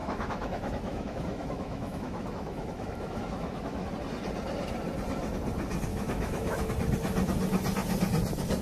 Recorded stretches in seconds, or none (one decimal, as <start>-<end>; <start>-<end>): 3.9-5.9; 6.7-8.6